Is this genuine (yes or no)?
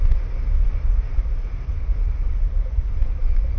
yes